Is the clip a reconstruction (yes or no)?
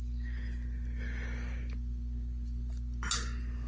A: no